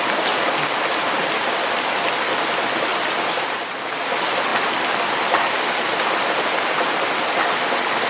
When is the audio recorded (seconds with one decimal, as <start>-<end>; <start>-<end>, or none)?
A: 0.0-8.1